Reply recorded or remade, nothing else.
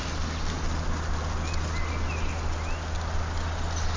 recorded